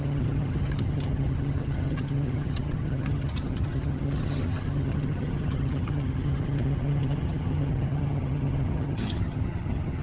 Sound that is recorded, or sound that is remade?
remade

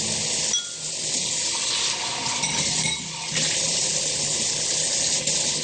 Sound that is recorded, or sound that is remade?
recorded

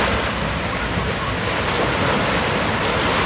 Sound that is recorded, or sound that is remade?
recorded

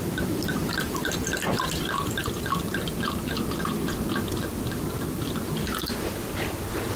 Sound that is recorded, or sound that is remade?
remade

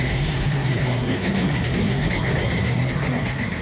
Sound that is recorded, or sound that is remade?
remade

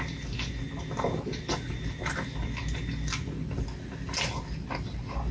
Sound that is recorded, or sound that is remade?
recorded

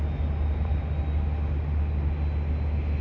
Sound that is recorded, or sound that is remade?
recorded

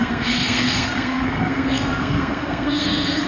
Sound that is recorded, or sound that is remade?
remade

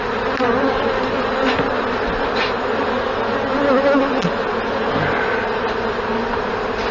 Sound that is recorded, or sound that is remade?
recorded